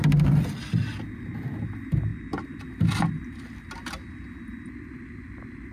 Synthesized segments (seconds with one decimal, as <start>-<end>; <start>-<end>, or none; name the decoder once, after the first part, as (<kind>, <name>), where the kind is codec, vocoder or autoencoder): none